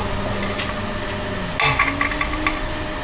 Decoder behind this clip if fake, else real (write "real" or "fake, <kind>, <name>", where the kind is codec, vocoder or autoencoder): real